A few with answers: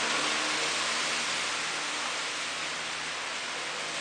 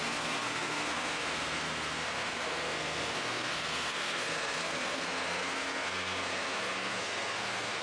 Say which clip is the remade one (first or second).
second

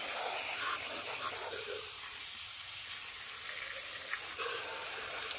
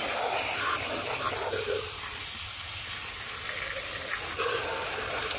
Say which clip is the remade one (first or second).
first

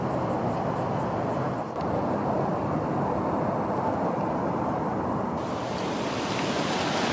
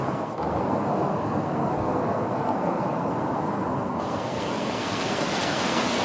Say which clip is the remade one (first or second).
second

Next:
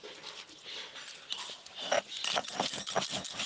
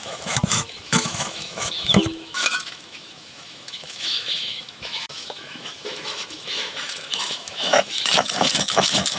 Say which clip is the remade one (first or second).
second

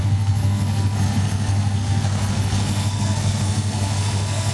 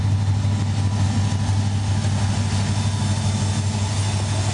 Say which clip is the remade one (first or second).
first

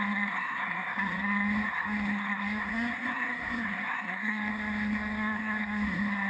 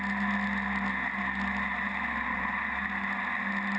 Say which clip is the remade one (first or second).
first